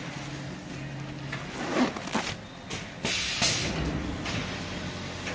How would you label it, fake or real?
real